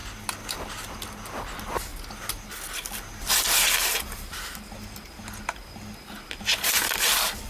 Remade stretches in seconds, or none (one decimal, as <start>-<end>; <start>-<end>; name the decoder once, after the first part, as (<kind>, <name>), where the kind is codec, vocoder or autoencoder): none